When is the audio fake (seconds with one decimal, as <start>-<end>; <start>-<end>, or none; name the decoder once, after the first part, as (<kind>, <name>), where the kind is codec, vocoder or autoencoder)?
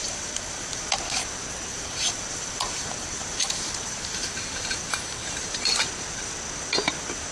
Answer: 0.0-0.8 (vocoder, BigVGAN v2); 1.7-5.9